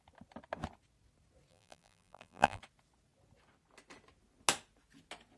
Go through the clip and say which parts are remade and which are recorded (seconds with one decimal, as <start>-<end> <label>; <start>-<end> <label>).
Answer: 0.0-1.5 recorded; 1.5-2.6 remade; 2.6-5.4 recorded